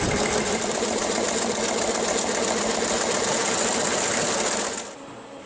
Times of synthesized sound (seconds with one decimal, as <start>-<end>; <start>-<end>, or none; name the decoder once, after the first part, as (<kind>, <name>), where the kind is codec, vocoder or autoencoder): 0.0-1.0 (vocoder, BigVGAN v2); 3.8-5.5